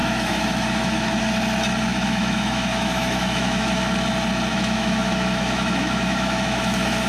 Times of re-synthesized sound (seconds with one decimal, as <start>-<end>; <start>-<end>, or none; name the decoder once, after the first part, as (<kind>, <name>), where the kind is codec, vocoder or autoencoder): 0.0-1.2 (autoencoder, DAC-VAE); 1.9-3.8; 4.5-7.1